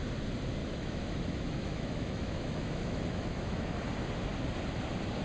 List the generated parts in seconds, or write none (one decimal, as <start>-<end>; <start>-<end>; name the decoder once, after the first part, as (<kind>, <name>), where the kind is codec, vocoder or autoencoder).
0.6-3.7 (autoencoder, DAC-VAE)